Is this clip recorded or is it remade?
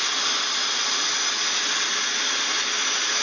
recorded